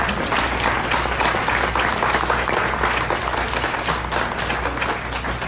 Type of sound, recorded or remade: recorded